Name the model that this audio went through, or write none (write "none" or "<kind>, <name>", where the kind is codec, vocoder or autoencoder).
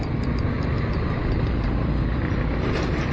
none